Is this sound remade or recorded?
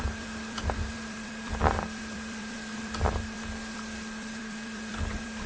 remade